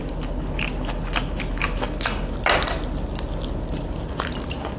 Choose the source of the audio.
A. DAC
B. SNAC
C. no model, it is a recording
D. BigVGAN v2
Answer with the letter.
C